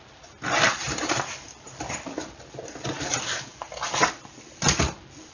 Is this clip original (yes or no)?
yes